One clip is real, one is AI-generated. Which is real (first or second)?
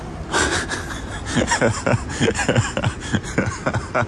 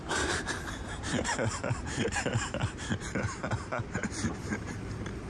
first